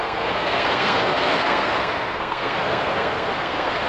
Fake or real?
fake